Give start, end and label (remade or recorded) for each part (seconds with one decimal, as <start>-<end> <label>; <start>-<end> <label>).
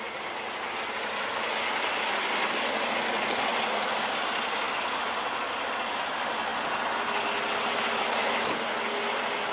0.0-9.5 recorded